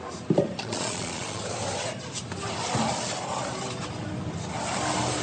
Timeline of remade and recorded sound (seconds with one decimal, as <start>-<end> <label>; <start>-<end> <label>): 0.0-0.6 recorded; 0.6-1.4 remade; 1.4-5.2 recorded